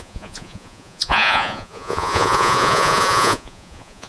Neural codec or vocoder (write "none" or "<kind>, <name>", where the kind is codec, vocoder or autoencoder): vocoder, Vocos